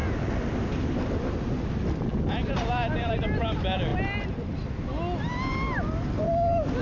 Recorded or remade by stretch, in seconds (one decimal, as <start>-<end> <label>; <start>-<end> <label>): 0.0-6.8 recorded